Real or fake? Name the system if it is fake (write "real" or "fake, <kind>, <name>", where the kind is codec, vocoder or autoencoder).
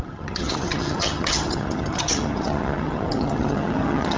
fake, vocoder, HiFi-GAN